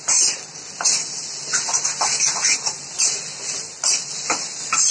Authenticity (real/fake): real